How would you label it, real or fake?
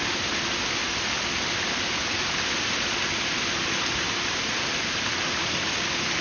real